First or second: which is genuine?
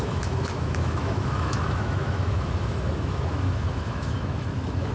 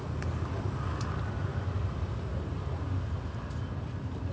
second